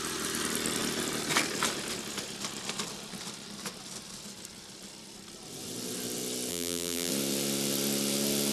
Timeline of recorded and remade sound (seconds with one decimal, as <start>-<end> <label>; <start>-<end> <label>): 0.0-6.5 recorded; 6.5-7.1 remade; 7.1-8.5 recorded